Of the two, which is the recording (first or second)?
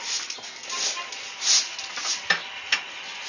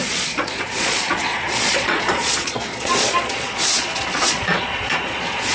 first